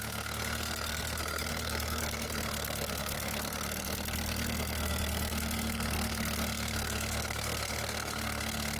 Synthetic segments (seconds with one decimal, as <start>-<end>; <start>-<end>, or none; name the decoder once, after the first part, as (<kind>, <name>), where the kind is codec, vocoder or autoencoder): 0.0-8.8 (codec, SNAC)